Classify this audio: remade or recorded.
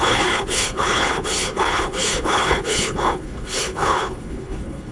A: remade